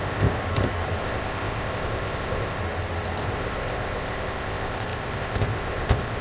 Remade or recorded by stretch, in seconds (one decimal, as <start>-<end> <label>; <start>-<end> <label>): 0.0-0.4 remade; 0.4-1.0 recorded; 1.0-2.6 remade; 2.6-3.2 recorded; 3.2-6.2 remade